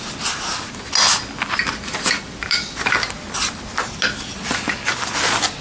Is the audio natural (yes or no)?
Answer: yes